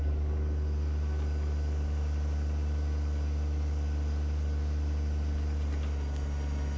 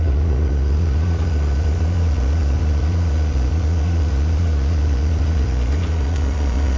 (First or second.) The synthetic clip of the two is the second